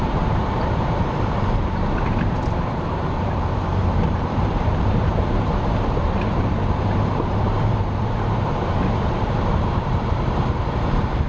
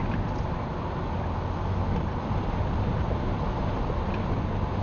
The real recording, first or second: second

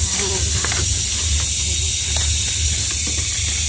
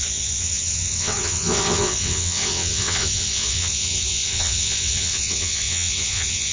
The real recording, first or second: first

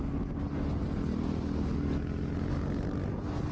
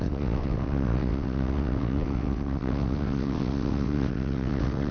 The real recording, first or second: first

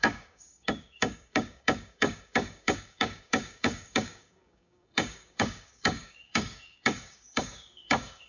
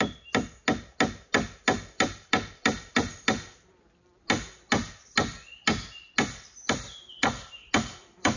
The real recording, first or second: second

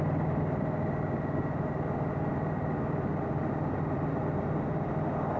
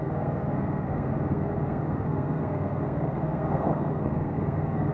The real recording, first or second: first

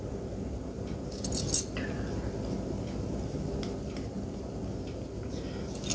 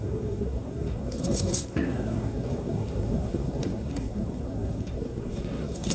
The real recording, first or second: first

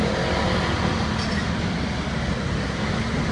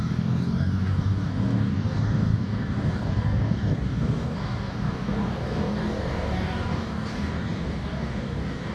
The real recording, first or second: first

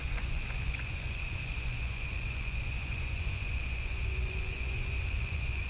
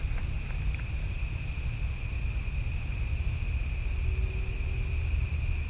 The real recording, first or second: second